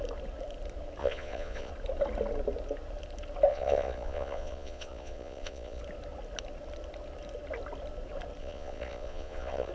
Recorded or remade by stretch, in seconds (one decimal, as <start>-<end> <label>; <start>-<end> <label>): 0.0-1.0 recorded; 1.0-1.7 remade; 1.7-3.5 recorded; 3.5-5.8 remade; 5.8-8.4 recorded; 8.4-9.7 remade